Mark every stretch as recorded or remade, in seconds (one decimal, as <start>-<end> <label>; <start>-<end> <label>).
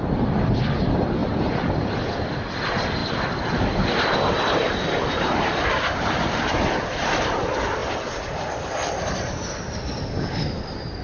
0.0-3.0 remade; 3.0-5.1 recorded; 5.1-11.0 remade